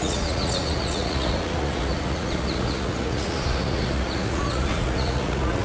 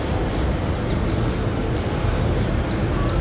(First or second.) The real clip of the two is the second